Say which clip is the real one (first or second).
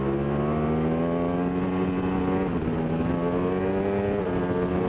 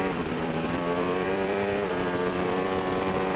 first